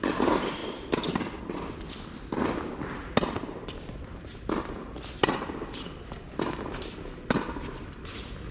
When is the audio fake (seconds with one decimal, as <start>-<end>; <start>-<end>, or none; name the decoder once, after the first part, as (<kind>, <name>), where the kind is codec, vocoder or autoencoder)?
0.6-1.4 (vocoder, BigVGAN v2); 5.2-6.2